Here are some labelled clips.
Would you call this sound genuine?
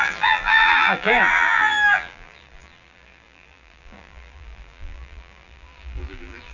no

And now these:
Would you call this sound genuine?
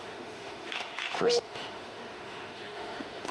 no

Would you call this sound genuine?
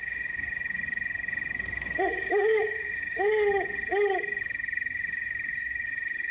no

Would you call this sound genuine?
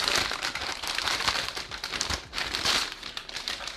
no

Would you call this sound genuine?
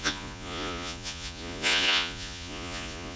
no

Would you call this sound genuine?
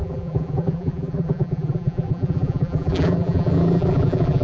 no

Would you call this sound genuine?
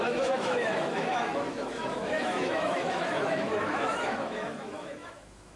no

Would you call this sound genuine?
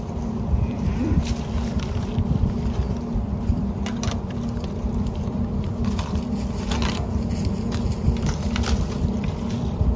no